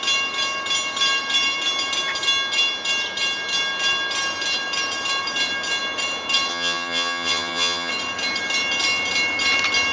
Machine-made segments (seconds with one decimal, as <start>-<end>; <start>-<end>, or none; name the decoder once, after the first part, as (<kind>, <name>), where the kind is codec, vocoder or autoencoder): 6.5-7.9 (vocoder, HiFi-GAN)